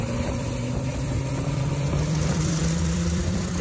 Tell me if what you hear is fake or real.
fake